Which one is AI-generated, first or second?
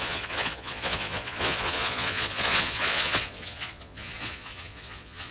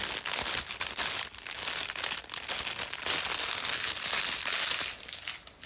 first